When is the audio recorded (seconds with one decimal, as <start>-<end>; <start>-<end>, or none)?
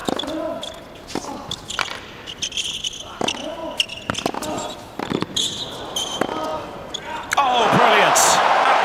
0.0-8.8